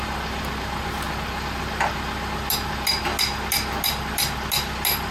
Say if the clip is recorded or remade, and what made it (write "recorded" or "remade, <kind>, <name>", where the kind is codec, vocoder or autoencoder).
recorded